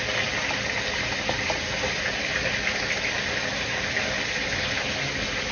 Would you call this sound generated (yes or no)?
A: no